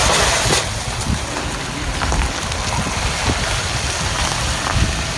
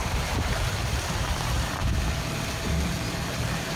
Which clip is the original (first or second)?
first